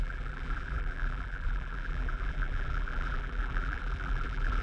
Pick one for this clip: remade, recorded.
remade